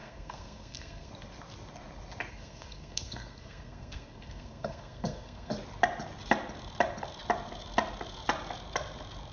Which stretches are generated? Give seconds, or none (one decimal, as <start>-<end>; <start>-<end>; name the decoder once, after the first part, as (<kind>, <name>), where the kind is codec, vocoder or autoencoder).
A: 0.0-1.1 (codec, SNAC); 2.3-5.5